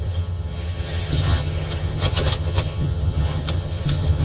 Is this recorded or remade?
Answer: remade